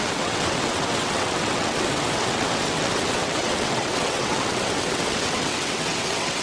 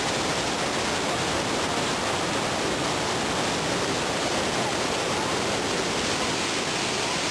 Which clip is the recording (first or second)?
second